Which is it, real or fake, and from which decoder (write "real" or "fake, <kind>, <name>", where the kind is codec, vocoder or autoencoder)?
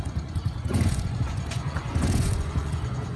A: fake, vocoder, Vocos